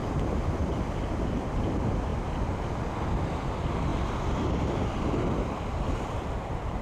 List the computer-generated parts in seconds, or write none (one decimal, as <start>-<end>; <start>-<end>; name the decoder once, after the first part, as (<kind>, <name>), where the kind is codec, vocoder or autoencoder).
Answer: none